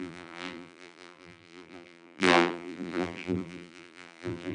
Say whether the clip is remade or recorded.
remade